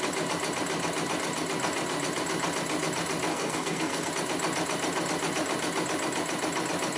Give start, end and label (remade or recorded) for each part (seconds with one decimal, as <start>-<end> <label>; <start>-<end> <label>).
0.0-3.3 recorded; 3.3-4.1 remade; 4.1-7.0 recorded

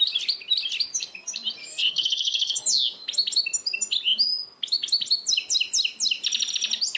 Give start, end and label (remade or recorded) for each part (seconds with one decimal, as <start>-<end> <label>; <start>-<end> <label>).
0.0-1.7 recorded; 1.7-2.6 remade; 2.6-7.0 recorded

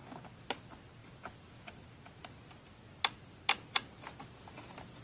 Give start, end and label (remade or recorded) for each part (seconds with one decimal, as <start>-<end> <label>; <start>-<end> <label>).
0.0-5.0 recorded

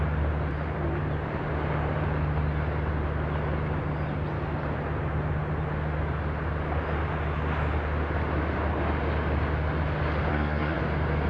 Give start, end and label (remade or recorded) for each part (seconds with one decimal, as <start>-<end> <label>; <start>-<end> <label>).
0.0-10.3 recorded; 10.3-10.8 remade; 10.8-11.3 recorded

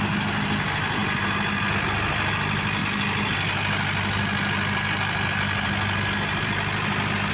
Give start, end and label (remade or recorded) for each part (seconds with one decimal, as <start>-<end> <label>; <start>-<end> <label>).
0.0-7.3 recorded